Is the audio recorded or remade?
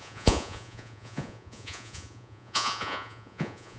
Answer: remade